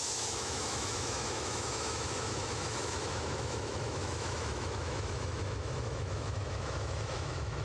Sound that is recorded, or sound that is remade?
remade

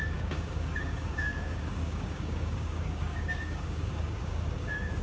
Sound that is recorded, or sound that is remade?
remade